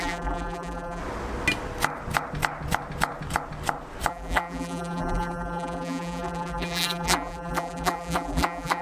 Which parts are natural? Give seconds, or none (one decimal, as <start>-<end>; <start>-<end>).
1.0-4.1